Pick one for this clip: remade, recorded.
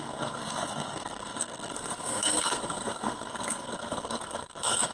remade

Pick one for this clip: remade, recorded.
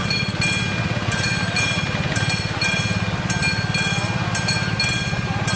recorded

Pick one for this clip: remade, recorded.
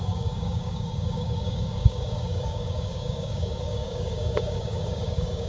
remade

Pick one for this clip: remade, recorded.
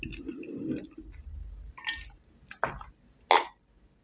recorded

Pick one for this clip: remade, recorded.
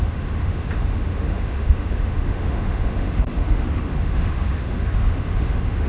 remade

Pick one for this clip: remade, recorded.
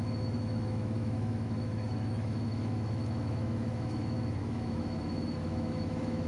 remade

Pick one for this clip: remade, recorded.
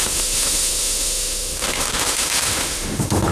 remade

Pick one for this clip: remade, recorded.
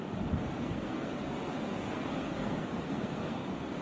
remade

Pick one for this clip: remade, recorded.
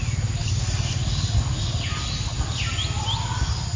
recorded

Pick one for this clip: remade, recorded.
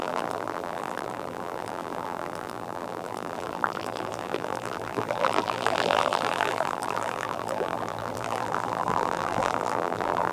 remade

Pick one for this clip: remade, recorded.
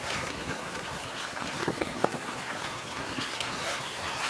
remade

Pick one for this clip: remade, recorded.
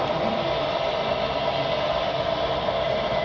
recorded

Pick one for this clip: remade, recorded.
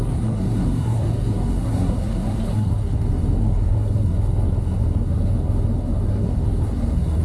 remade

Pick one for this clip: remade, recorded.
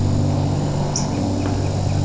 recorded